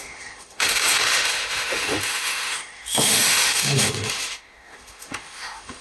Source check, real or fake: fake